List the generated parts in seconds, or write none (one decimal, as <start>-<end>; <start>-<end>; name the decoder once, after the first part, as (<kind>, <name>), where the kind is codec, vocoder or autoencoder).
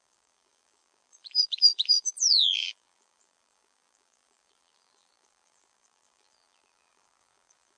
0.0-7.8 (vocoder, BigVGAN v2)